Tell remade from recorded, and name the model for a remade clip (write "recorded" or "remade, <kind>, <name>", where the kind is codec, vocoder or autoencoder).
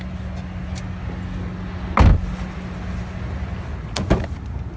recorded